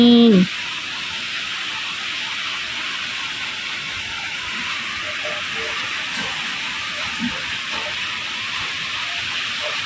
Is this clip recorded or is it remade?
recorded